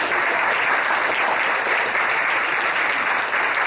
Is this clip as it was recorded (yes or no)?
yes